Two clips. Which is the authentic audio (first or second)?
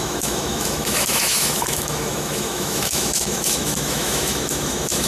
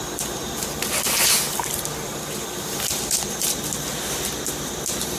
second